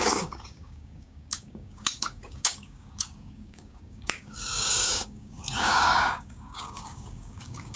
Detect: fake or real fake